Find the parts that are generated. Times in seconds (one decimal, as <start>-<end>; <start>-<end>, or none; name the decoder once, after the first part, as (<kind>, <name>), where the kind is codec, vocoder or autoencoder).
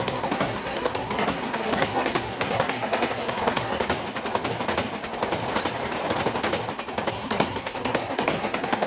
0.0-3.9 (codec, SNAC); 7.1-8.9